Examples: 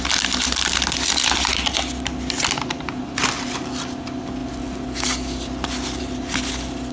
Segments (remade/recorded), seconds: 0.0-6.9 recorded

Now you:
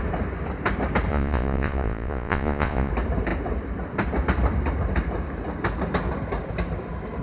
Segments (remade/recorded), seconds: 0.0-1.1 recorded; 1.1-2.9 remade; 2.9-7.2 recorded

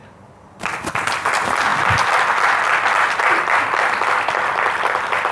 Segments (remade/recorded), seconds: 0.0-5.3 recorded